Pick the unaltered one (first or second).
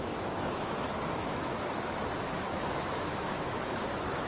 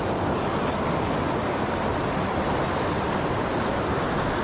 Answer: second